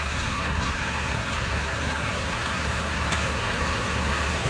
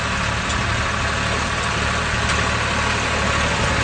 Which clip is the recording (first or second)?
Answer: second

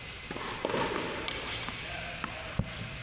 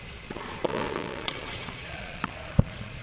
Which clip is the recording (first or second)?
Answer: first